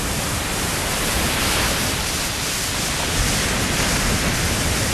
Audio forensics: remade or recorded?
recorded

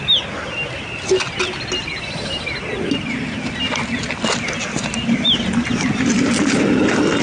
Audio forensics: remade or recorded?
recorded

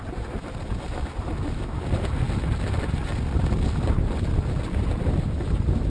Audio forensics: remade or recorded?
recorded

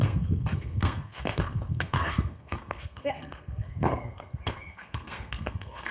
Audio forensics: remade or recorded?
remade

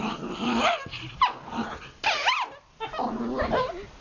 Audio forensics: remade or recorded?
recorded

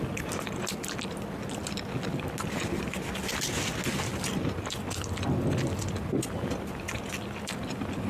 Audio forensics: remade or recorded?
recorded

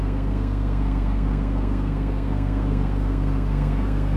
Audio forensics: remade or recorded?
remade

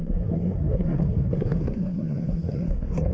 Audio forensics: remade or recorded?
remade